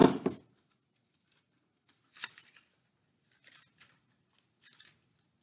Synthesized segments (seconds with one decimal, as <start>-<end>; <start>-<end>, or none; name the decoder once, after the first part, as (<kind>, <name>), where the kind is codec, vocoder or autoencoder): none